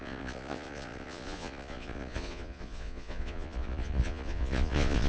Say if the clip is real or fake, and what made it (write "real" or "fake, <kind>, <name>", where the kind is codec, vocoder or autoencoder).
fake, vocoder, Vocos